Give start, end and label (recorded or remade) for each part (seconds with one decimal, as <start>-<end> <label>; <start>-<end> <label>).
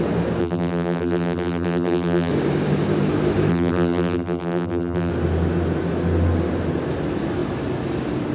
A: 0.0-0.4 recorded; 0.4-2.3 remade; 2.3-3.5 recorded; 3.5-5.1 remade; 5.1-8.3 recorded